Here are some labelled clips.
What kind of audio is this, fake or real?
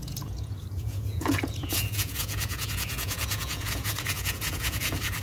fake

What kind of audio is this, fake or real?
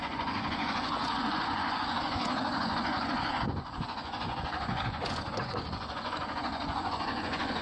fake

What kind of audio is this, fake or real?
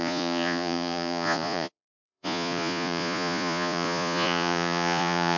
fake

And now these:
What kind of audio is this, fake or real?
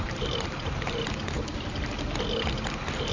real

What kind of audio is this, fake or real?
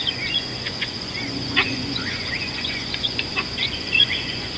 fake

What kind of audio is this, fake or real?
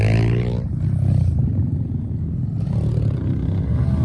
real